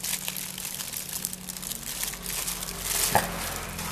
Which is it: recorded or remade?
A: recorded